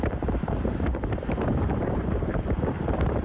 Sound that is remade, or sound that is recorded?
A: remade